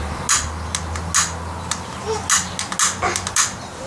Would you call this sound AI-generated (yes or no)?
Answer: no